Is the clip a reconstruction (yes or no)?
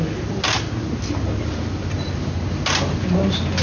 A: no